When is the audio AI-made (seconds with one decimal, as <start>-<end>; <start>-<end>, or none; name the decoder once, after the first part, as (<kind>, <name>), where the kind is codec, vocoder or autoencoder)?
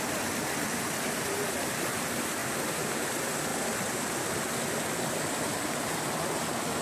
none